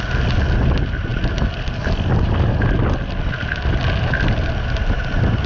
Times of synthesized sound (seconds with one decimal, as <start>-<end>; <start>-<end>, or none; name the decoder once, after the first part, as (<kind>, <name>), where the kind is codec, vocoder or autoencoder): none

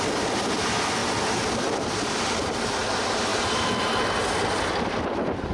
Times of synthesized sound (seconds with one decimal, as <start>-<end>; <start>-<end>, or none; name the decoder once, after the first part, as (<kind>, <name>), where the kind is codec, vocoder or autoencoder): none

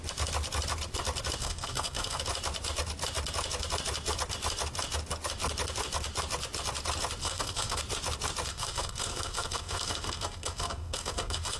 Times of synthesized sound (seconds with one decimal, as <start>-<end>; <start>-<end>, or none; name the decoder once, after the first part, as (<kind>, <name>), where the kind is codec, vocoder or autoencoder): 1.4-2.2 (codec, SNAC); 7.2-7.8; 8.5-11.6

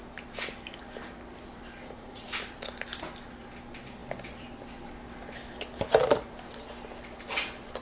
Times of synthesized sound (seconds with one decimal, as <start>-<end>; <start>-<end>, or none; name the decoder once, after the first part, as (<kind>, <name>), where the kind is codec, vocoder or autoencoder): 1.8-2.3 (vocoder, Vocos)

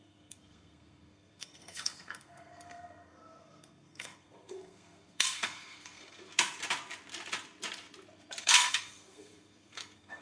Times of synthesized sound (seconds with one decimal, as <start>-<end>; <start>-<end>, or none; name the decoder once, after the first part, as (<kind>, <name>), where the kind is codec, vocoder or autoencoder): 0.0-6.3 (codec, SNAC); 8.4-10.2

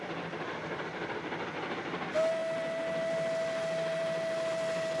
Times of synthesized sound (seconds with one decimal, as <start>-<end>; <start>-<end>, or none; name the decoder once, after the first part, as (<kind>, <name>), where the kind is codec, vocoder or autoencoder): none

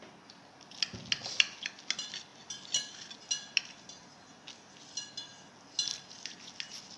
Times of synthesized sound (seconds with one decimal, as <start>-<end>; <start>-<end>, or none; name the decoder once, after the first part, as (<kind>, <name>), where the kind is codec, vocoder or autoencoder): none

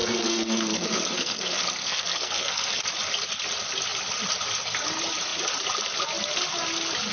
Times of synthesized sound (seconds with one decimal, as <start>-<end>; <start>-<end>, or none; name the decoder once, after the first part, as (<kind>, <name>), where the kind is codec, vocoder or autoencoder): 0.0-2.8 (codec, SNAC)